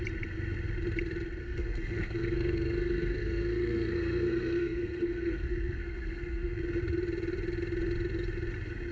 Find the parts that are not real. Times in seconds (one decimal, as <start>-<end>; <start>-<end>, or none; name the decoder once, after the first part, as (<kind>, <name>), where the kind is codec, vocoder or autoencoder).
1.4-6.6 (codec, SNAC)